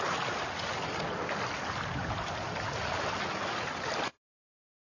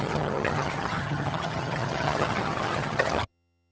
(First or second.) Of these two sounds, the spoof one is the second